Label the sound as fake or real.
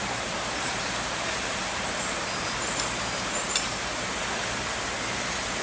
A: fake